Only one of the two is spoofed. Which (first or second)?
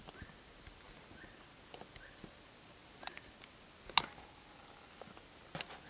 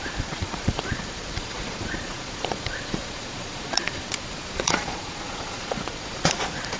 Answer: second